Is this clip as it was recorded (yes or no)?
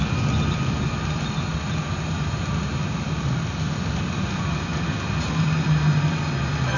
yes